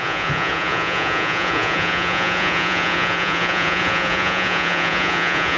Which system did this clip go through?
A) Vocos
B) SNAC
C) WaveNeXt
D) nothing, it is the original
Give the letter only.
A